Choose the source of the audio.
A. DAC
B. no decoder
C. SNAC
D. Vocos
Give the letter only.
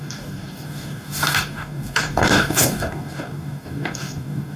A